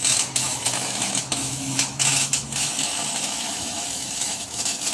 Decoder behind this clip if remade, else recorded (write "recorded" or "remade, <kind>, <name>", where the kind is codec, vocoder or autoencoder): remade, autoencoder, DAC-VAE